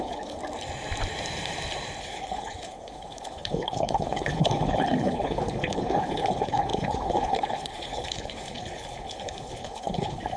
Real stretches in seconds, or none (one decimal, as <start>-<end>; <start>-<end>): 0.4-2.0